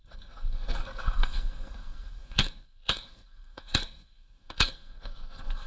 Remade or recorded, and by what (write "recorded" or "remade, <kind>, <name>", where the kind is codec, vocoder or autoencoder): remade, codec, SNAC